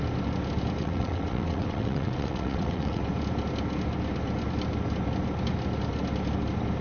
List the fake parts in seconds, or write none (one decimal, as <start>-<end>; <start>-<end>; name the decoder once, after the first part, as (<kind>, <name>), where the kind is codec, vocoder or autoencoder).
0.8-3.0 (vocoder, WaveNeXt)